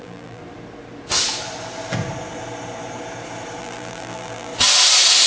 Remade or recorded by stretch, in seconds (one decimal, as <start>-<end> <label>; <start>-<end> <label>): 0.0-0.4 remade; 0.4-3.6 recorded; 3.6-4.5 remade; 4.5-5.3 recorded